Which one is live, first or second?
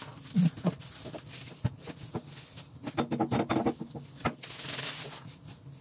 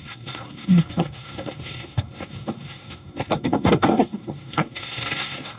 first